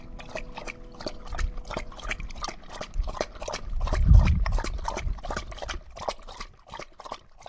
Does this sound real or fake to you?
real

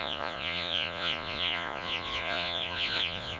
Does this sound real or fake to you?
fake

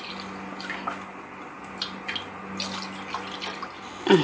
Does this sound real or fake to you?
real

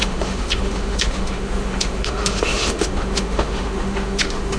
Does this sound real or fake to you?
fake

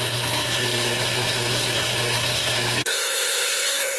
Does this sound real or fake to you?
fake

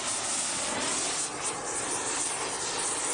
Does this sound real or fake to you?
real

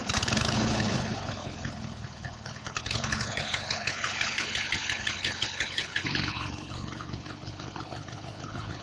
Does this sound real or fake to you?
fake